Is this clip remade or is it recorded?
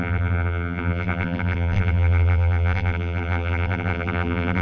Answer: remade